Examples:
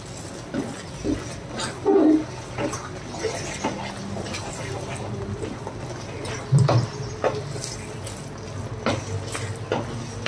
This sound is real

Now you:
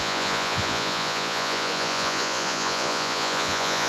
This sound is fake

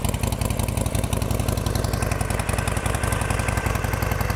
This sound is real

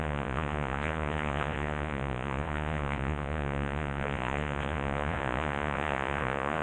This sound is fake